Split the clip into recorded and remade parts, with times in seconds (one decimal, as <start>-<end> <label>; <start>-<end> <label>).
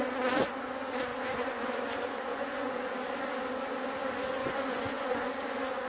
0.0-1.1 recorded; 1.1-1.7 remade; 1.7-2.3 recorded; 2.3-2.9 remade; 2.9-4.4 recorded; 4.4-5.3 remade; 5.3-5.9 recorded